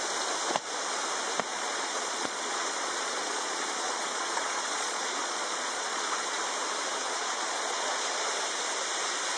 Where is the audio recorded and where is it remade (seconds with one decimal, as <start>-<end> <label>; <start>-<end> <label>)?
0.0-1.5 recorded; 1.5-6.4 remade; 6.4-7.0 recorded; 7.0-8.3 remade; 8.3-9.4 recorded